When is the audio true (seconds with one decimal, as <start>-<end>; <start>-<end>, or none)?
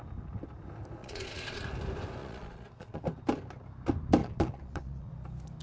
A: 0.0-1.0; 1.6-2.2; 3.0-4.2; 5.1-5.6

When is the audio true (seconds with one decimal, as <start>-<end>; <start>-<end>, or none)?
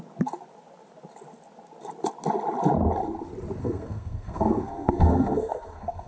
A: 0.0-3.6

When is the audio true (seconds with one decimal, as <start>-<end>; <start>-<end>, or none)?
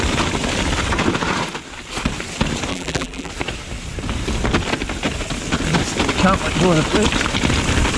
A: 0.0-2.7; 3.3-8.0